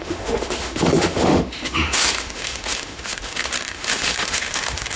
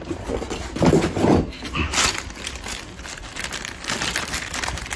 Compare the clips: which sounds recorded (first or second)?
second